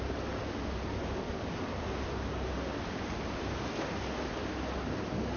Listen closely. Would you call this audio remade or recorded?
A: recorded